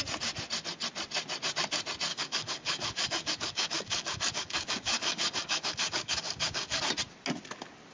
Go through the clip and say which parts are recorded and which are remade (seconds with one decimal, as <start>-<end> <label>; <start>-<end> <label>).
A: 0.0-2.1 recorded; 2.1-6.8 remade; 6.8-7.9 recorded